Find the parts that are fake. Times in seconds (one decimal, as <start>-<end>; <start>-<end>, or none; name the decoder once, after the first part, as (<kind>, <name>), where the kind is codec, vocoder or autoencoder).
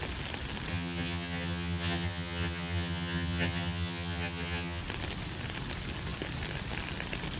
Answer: 0.7-4.8 (vocoder, HiFi-GAN)